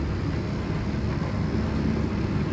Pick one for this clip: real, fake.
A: real